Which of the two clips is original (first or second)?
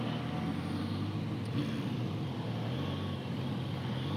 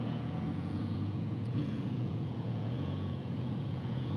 first